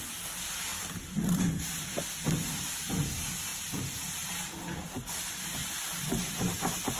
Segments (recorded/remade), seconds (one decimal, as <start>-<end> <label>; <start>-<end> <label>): 0.0-0.7 recorded; 0.7-1.5 remade; 1.5-3.5 recorded; 3.5-4.3 remade; 4.3-5.6 recorded; 5.6-6.3 remade; 6.3-7.0 recorded